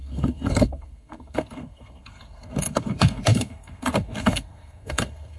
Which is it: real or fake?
fake